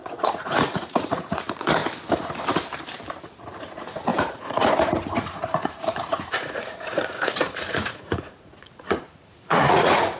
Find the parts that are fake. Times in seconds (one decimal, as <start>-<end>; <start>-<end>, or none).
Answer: 0.0-1.8; 3.6-10.2